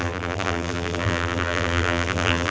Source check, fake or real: fake